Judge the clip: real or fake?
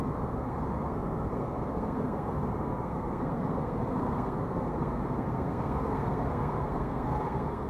fake